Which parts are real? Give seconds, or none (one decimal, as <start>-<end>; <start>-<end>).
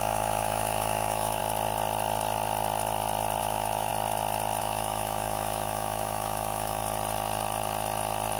1.4-3.4; 3.9-4.6; 6.8-8.4